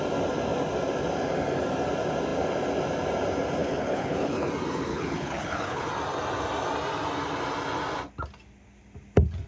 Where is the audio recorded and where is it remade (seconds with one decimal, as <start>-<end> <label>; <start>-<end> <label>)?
0.0-3.6 recorded; 3.6-4.5 remade; 4.5-4.9 recorded; 4.9-5.9 remade; 5.9-9.5 recorded